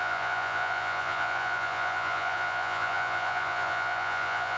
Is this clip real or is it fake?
fake